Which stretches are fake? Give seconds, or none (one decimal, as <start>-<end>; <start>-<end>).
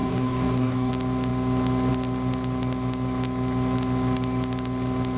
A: 0.0-0.9